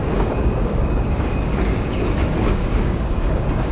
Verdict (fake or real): fake